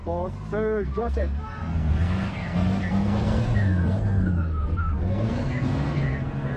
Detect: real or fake fake